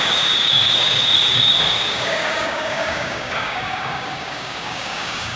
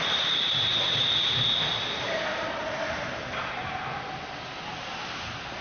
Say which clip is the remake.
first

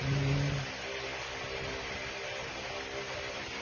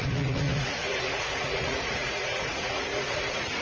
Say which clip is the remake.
second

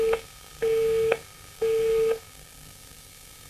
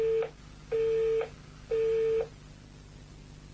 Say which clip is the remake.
first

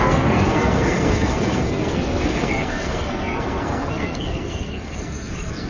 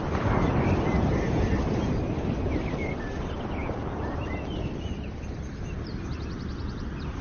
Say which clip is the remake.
first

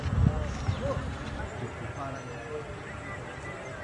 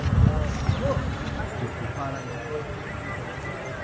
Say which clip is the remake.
second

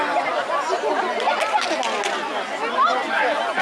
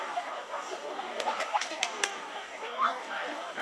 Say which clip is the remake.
second